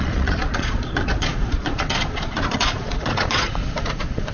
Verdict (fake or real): fake